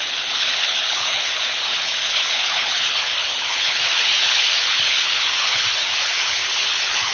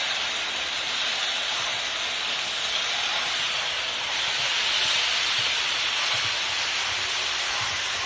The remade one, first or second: first